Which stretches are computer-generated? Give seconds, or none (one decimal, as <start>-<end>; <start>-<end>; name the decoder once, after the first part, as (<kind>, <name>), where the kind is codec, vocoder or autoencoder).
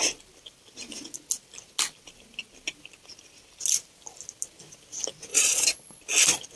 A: 5.3-6.0 (vocoder, Vocos)